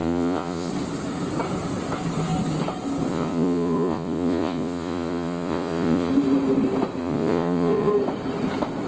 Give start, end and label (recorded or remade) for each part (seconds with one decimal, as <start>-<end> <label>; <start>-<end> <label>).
0.0-0.7 remade; 0.7-3.1 recorded; 3.1-6.1 remade; 6.1-7.0 recorded; 7.0-7.9 remade; 7.9-8.9 recorded